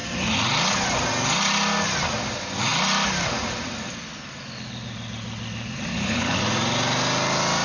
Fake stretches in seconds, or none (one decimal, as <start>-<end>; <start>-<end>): 5.9-6.4